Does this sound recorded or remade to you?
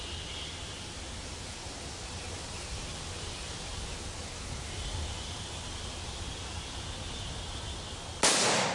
recorded